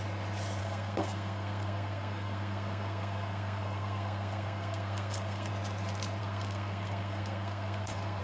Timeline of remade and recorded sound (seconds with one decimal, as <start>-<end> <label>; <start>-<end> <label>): 0.0-0.6 recorded; 0.6-5.5 remade; 5.5-6.2 recorded; 6.2-8.2 remade